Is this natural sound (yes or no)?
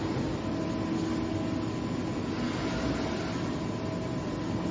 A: yes